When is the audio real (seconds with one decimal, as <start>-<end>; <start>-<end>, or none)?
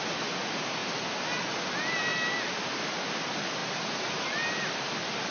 0.0-5.3